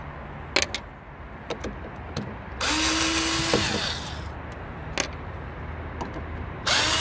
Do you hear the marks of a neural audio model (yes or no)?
no